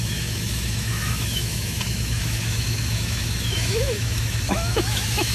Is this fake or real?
fake